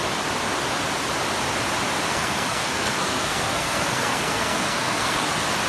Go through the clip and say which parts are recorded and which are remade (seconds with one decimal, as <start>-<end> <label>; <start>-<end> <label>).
0.0-2.1 recorded; 2.1-5.3 remade; 5.3-5.7 recorded